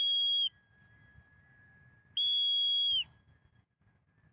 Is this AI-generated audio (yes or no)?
no